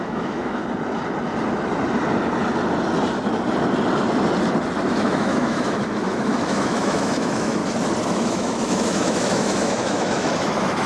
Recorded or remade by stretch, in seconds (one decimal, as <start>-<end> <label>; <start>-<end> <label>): 0.0-0.6 remade; 0.6-4.9 recorded; 4.9-7.6 remade; 7.6-8.1 recorded; 8.1-10.9 remade